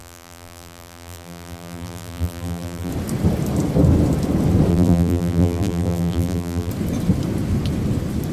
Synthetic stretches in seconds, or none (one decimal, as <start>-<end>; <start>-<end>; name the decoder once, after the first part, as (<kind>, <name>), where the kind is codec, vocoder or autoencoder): 0.0-2.9 (vocoder, BigVGAN v2); 4.7-6.7